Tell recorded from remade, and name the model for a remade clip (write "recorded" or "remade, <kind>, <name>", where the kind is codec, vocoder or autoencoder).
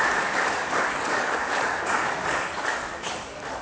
remade, codec, DAC